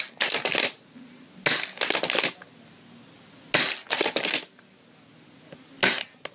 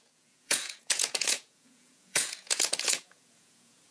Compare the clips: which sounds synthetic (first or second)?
second